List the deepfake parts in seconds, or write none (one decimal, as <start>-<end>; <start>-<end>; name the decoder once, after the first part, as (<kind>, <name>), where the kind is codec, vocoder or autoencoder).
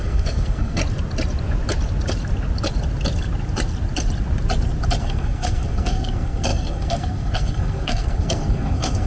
0.0-0.8 (codec, SNAC); 5.0-9.1